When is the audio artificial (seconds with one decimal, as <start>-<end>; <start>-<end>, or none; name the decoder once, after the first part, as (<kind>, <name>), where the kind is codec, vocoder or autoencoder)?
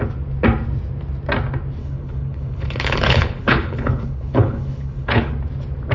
1.8-5.3 (codec, HILCodec)